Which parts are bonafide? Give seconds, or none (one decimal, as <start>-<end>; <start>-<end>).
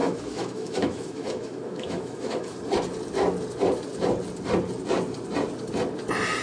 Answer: 2.6-6.4